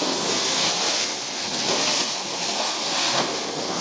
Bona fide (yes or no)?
no